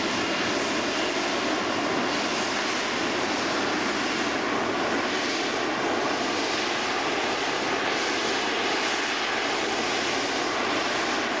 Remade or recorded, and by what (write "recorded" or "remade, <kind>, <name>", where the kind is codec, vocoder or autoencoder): recorded